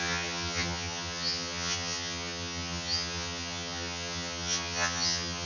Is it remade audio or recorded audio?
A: remade